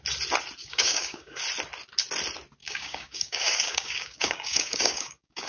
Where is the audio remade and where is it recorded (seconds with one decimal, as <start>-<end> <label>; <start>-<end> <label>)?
0.0-0.6 recorded; 0.6-1.4 remade; 1.4-2.6 recorded; 2.6-5.5 remade